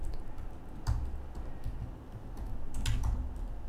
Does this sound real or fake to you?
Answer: real